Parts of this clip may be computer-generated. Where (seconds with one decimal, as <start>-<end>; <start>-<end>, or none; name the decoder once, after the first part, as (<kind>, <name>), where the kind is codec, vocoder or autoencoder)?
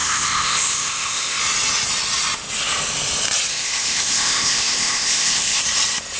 0.0-1.4 (codec, ZipCodec); 3.5-5.6